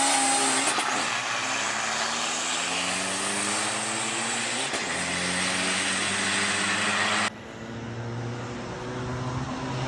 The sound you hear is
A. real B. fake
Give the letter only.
A